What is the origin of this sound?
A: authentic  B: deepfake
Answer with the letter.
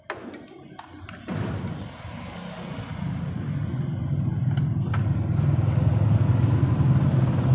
A